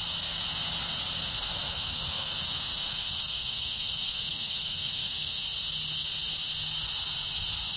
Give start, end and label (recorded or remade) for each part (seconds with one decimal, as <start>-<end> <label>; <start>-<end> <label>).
0.0-1.3 recorded; 1.3-5.4 remade; 5.4-7.8 recorded